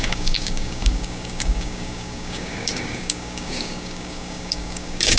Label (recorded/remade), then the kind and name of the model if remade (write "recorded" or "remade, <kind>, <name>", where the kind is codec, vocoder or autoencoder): remade, codec, DAC